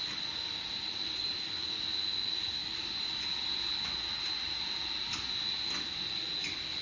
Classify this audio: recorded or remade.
recorded